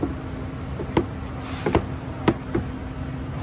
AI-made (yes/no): no